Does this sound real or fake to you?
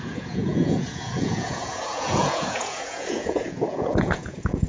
fake